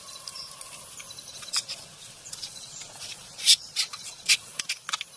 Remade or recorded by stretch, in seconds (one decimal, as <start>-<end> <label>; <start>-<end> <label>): 0.0-1.3 recorded; 1.3-4.4 remade; 4.4-5.2 recorded